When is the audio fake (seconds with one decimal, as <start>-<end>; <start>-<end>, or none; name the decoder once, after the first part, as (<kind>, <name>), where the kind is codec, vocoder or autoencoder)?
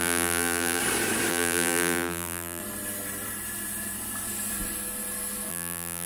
0.0-0.8 (vocoder, BigVGAN v2); 1.3-2.6; 5.5-6.1